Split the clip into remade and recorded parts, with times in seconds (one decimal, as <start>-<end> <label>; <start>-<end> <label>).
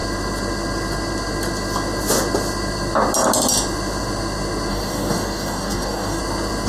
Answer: 0.0-4.7 recorded; 4.7-6.2 remade; 6.2-6.7 recorded